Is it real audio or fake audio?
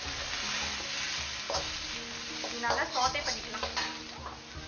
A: real